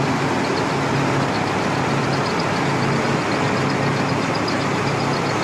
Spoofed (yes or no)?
no